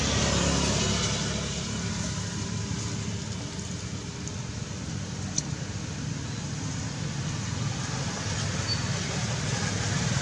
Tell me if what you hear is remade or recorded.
recorded